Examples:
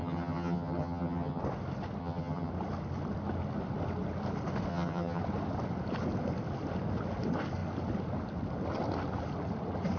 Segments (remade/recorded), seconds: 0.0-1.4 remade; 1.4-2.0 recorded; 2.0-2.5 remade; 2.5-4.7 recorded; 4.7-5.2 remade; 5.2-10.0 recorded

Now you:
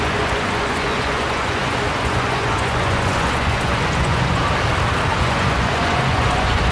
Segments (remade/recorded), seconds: 0.0-4.4 remade; 4.4-5.2 recorded; 5.2-6.7 remade

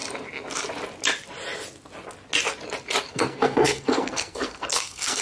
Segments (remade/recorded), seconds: 0.0-3.1 recorded; 3.1-5.2 remade